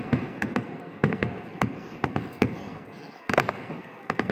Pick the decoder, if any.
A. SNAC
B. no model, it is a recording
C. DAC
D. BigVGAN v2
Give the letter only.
A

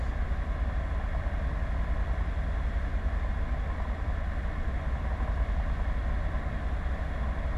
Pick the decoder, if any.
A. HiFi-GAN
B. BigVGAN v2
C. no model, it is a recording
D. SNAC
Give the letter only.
C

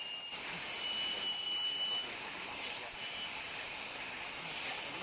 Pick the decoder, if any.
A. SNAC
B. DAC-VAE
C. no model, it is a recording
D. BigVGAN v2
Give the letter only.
C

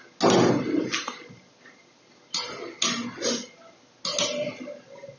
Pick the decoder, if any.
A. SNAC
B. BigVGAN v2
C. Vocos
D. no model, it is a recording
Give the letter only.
D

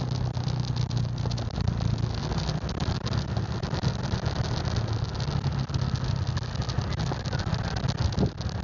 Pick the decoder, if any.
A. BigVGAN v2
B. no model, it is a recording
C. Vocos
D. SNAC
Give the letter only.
B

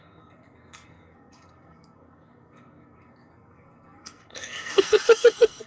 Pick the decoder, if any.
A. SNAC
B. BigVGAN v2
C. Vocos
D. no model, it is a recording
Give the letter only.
A